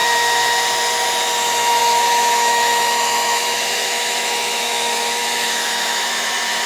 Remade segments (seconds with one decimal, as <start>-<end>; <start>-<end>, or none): 1.8-6.7